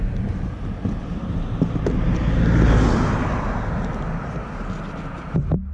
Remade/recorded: recorded